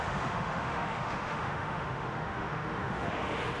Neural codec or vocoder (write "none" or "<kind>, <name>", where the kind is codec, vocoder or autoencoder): autoencoder, DAC-VAE